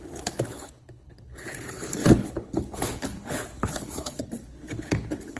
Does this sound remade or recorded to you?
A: remade